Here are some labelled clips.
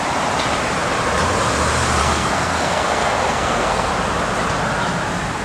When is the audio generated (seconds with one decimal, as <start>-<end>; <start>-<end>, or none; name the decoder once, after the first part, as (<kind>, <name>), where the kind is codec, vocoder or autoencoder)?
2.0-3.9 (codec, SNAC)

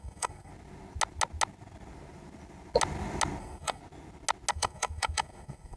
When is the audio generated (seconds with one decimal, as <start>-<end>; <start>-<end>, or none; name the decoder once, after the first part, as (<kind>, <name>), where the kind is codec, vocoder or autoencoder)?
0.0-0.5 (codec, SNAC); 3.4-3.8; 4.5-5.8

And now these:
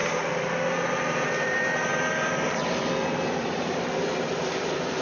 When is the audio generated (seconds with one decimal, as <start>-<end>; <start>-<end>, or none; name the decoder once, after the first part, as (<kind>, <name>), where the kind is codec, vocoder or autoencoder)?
1.1-1.9 (vocoder, BigVGAN v2); 3.4-5.0

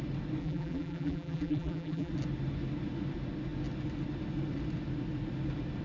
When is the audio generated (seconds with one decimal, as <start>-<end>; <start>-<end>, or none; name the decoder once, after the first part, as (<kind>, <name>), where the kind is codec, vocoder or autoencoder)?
0.4-2.1 (vocoder, BigVGAN v2)

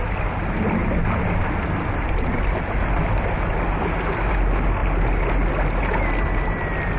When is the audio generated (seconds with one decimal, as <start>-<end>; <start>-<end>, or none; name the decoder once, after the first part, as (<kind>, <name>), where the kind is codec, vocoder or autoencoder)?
none